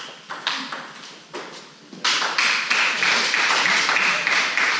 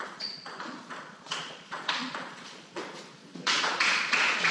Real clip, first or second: first